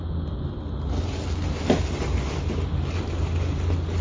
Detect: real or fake real